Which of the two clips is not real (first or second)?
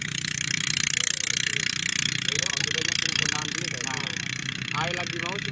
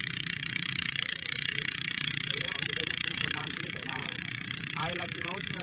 second